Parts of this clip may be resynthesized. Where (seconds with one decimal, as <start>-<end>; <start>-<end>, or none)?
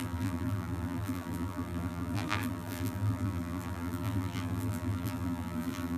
0.0-6.0